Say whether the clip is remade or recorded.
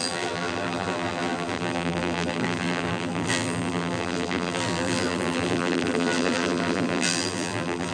remade